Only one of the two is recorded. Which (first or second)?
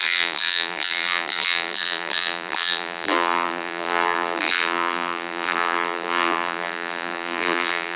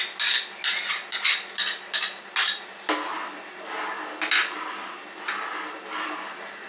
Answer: second